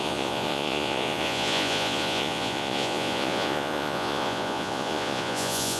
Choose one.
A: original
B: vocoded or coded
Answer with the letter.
B